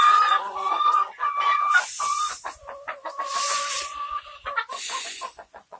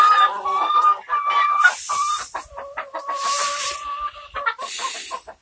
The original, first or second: second